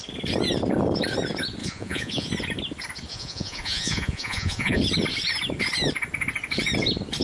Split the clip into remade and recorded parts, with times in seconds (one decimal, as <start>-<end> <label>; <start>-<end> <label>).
0.0-1.6 recorded; 1.6-2.3 remade; 2.3-3.1 recorded; 3.1-4.8 remade; 4.8-7.2 recorded